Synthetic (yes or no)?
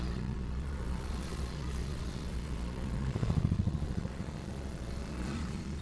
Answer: yes